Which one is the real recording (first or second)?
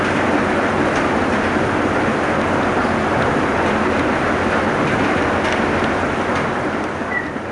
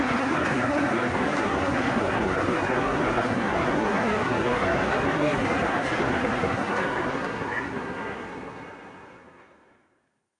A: first